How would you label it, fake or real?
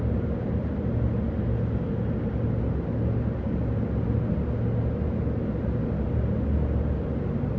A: real